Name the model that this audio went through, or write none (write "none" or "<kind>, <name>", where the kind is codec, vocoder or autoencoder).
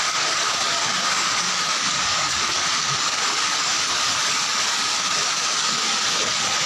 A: codec, DAC